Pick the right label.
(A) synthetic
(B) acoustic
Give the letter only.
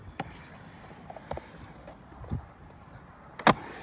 B